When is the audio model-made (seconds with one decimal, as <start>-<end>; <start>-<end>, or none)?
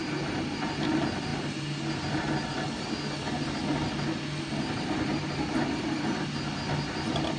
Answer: none